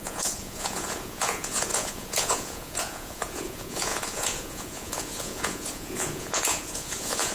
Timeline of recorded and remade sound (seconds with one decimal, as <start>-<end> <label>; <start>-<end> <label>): 0.0-7.3 remade